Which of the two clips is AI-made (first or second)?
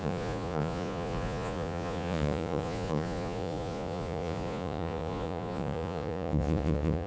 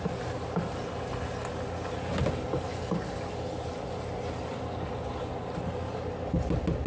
first